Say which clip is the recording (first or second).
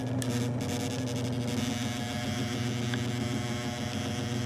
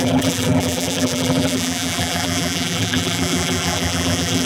first